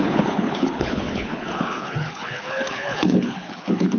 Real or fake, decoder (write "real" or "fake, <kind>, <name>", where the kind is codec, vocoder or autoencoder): fake, codec, HILCodec